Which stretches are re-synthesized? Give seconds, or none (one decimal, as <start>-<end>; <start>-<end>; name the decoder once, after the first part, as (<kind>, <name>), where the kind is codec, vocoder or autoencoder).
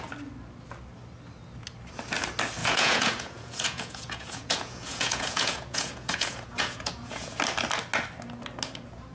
2.6-7.4 (vocoder, Vocos)